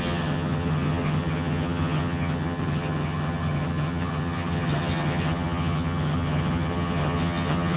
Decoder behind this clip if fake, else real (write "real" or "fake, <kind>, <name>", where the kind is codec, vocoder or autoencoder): fake, vocoder, HiFi-GAN